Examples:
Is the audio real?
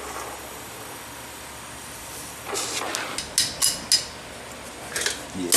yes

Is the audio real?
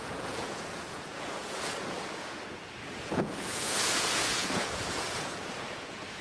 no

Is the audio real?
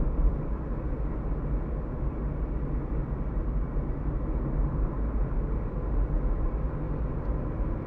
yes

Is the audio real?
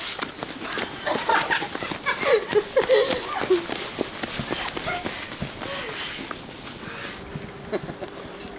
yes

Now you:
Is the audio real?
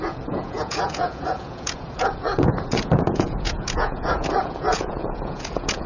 no